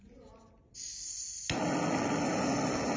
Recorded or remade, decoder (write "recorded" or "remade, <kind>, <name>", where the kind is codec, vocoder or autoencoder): recorded